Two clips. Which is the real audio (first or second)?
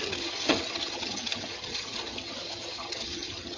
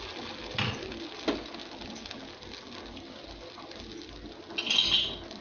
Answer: second